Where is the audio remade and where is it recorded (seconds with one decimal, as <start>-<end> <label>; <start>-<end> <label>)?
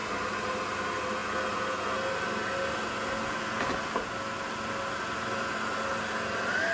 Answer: 0.0-6.7 recorded